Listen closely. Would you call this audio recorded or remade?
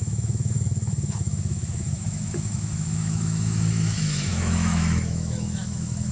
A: remade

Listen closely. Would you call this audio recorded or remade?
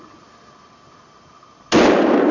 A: recorded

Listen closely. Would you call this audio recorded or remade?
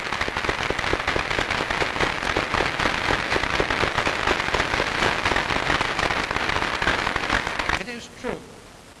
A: recorded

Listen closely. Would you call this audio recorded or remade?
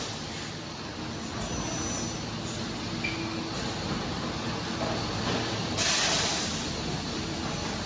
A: recorded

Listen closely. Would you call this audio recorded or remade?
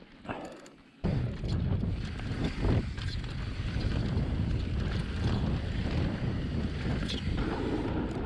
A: recorded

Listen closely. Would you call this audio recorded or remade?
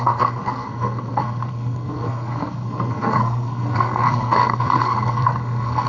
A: remade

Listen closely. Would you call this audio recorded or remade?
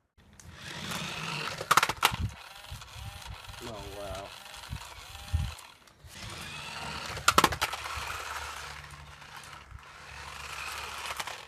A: recorded